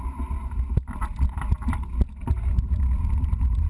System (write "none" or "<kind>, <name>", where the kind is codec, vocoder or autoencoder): none